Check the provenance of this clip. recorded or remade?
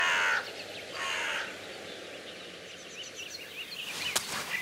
recorded